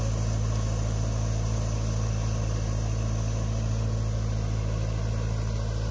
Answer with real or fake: real